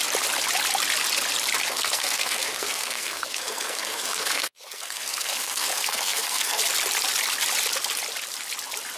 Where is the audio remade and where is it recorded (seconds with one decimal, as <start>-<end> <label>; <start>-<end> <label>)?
0.0-1.7 recorded; 1.7-6.6 remade; 6.6-9.0 recorded